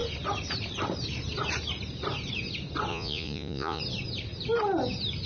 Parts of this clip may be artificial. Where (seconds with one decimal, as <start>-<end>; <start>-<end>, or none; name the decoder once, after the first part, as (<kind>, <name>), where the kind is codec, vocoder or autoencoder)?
2.9-3.8 (vocoder, Vocos)